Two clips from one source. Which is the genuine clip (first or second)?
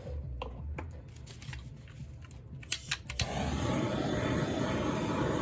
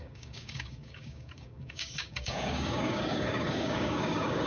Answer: first